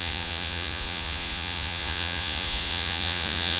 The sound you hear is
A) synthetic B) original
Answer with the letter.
A